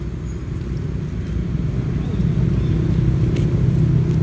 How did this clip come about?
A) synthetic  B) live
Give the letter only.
B